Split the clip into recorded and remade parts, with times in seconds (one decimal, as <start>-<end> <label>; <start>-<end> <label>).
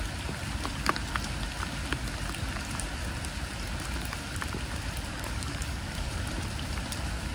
0.0-5.1 recorded; 5.1-6.1 remade; 6.1-7.3 recorded